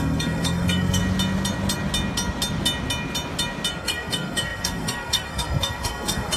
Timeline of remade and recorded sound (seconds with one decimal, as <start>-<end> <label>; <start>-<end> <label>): 0.0-1.0 remade; 1.0-3.7 recorded; 3.7-6.4 remade